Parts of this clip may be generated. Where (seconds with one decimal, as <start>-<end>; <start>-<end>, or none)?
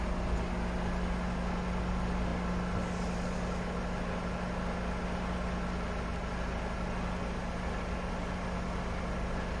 none